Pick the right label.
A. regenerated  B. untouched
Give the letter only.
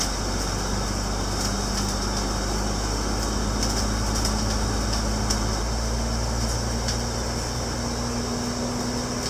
B